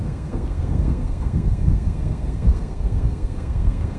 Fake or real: fake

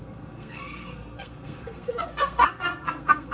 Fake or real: fake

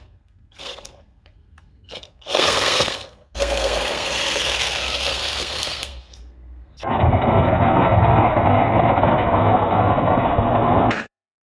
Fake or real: fake